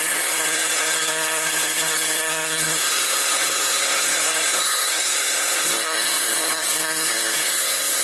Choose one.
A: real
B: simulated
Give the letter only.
B